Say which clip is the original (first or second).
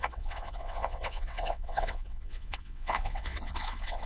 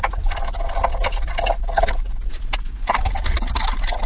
second